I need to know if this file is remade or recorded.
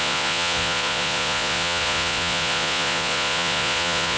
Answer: remade